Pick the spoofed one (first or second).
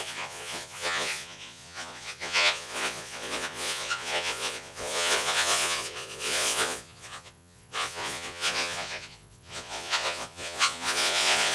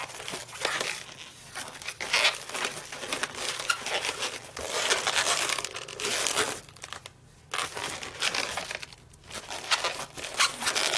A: first